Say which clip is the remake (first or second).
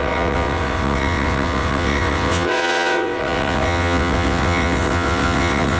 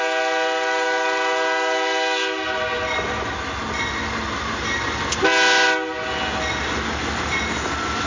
first